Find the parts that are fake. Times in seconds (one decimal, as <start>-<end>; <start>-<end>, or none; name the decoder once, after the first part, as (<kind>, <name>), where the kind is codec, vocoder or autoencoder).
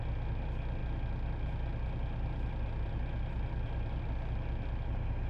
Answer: none